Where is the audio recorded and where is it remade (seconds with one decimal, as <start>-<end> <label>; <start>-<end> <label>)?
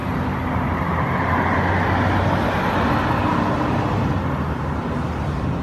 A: 0.0-5.6 recorded